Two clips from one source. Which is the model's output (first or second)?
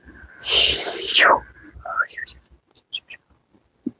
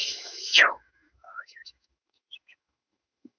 second